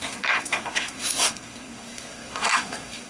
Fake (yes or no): yes